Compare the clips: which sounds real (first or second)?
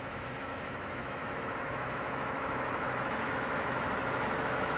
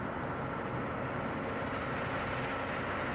second